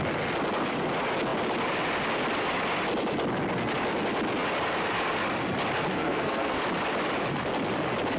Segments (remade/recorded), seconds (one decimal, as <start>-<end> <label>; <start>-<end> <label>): 0.0-5.9 recorded; 5.9-6.6 remade; 6.6-8.2 recorded